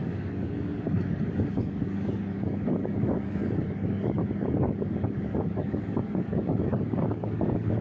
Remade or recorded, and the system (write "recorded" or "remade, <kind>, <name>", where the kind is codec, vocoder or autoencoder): remade, codec, DAC